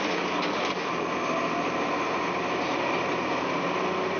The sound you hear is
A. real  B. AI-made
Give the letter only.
A